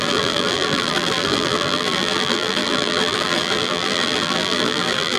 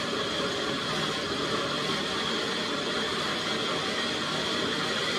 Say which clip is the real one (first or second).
second